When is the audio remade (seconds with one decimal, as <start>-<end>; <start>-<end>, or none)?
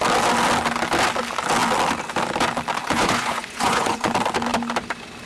2.8-4.1